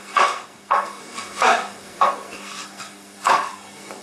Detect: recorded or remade remade